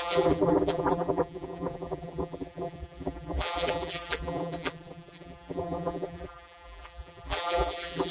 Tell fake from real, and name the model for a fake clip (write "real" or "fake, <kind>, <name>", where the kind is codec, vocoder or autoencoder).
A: fake, vocoder, BigVGAN v2